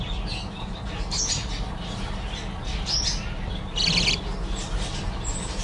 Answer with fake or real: real